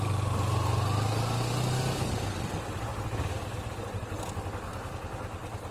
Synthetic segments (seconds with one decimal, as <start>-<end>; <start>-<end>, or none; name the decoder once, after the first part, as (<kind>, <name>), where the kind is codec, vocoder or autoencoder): none